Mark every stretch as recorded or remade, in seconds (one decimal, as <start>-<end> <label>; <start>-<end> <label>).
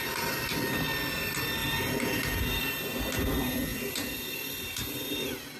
0.0-1.6 recorded; 1.6-2.8 remade; 2.8-3.7 recorded; 3.7-4.2 remade; 4.2-5.6 recorded